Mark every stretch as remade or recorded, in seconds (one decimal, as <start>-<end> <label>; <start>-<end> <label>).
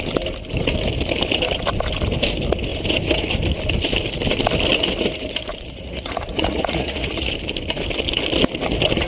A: 0.0-5.5 recorded; 5.5-7.3 remade; 7.3-9.1 recorded